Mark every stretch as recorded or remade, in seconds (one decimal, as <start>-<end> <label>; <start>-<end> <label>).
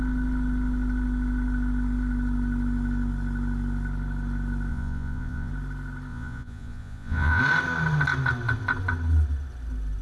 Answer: 0.0-4.7 recorded; 4.7-5.5 remade; 5.5-6.1 recorded; 6.1-7.4 remade; 7.4-10.0 recorded